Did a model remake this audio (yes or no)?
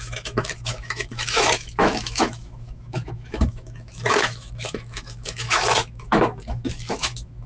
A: yes